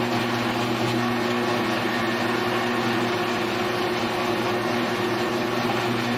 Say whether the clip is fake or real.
real